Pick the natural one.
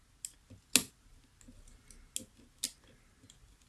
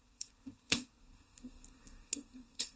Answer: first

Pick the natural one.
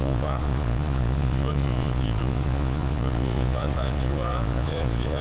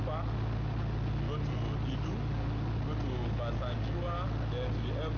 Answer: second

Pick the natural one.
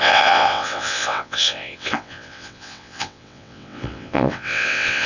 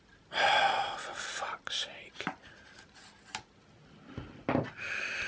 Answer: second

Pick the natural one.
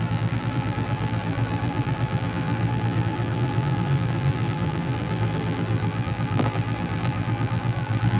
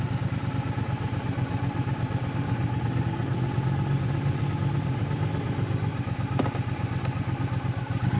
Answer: second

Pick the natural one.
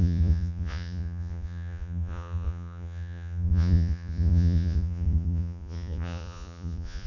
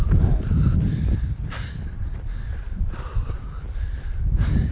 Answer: second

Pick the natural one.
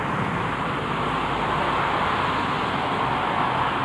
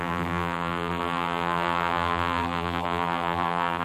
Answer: first